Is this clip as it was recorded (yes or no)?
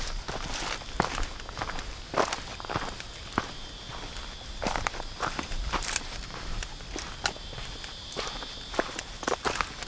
yes